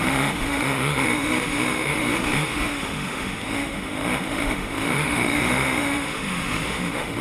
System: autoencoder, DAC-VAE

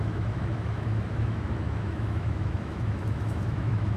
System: autoencoder, DAC-VAE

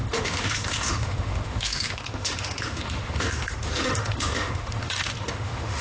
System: autoencoder, DAC-VAE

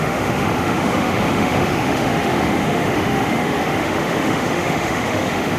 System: autoencoder, DAC-VAE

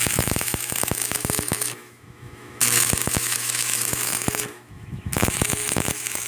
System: autoencoder, DAC-VAE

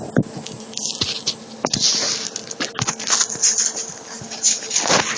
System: none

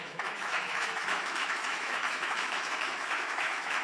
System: autoencoder, DAC-VAE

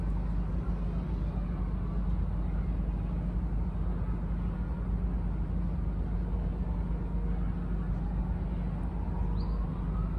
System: none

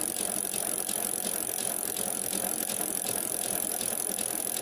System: none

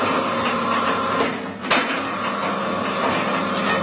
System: none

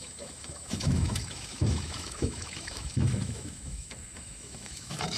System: autoencoder, DAC-VAE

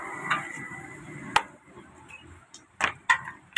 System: none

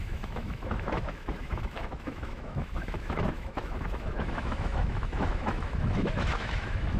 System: autoencoder, DAC-VAE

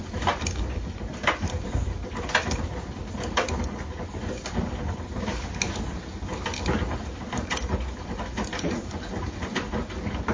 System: none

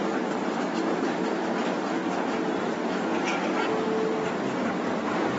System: none